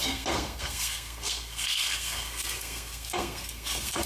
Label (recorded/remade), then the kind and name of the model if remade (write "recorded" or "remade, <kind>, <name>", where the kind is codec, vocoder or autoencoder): remade, codec, SNAC